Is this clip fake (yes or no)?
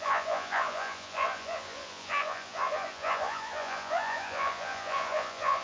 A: yes